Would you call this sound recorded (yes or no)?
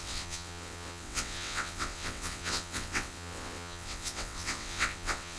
no